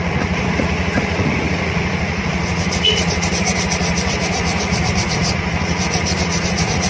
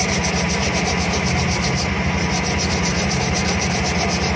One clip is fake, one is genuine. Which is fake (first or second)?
first